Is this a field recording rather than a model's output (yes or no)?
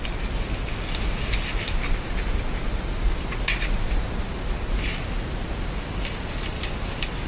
yes